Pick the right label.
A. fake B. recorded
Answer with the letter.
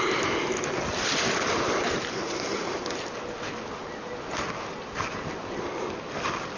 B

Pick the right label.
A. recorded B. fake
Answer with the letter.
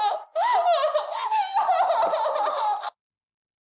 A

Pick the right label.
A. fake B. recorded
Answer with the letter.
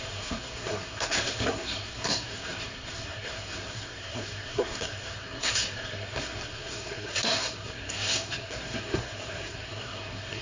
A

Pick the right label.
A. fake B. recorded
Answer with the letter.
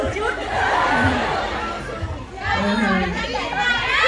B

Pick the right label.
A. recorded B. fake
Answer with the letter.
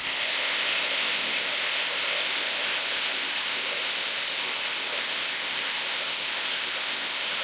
B